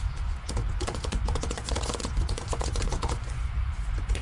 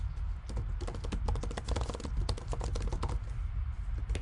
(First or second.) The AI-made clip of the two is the first